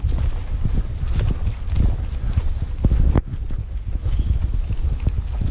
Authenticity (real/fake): real